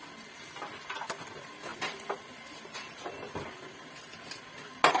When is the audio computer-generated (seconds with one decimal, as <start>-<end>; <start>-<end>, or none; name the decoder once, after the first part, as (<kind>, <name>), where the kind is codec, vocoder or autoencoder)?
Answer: none